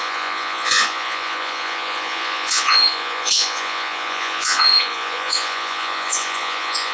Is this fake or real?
fake